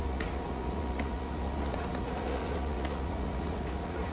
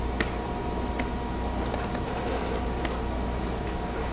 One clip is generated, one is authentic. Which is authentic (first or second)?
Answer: second